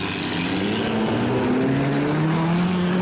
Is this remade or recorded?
recorded